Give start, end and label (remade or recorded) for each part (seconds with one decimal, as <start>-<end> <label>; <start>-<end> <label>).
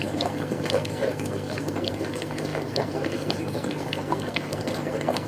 0.0-5.3 remade